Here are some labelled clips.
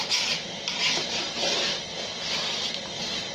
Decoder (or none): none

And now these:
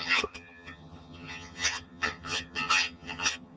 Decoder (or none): vocoder, HiFi-GAN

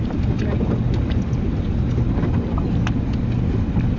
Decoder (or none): none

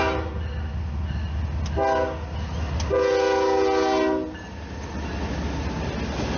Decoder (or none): none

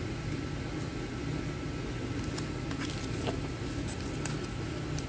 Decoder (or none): none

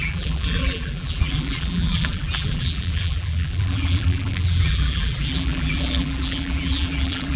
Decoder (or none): vocoder, BigVGAN v2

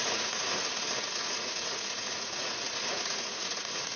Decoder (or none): vocoder, Vocos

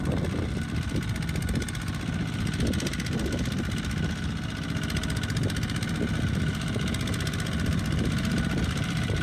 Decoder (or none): none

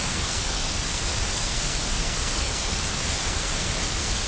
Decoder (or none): codec, SNAC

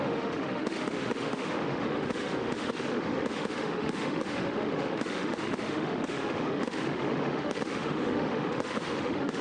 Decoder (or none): autoencoder, DAC-VAE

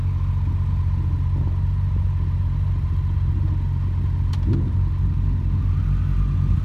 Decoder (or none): none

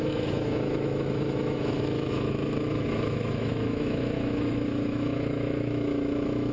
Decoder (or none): autoencoder, DAC-VAE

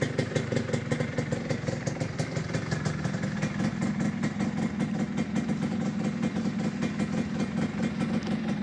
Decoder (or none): none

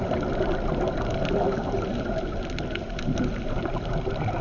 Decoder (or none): none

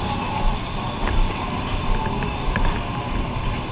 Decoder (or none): none